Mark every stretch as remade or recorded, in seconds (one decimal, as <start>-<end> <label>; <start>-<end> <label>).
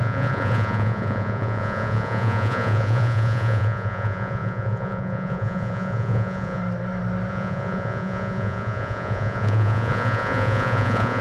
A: 0.0-6.6 remade; 6.6-7.3 recorded; 7.3-11.2 remade